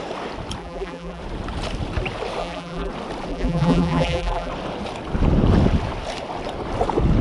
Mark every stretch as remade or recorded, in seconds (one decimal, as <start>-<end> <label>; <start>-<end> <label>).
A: 0.0-0.6 recorded; 0.6-1.2 remade; 1.2-2.4 recorded; 2.4-2.9 remade; 2.9-3.3 recorded; 3.3-4.5 remade; 4.5-7.2 recorded